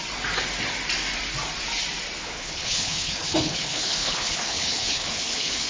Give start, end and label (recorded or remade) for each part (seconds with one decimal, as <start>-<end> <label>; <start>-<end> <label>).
0.0-2.2 recorded; 2.2-5.7 remade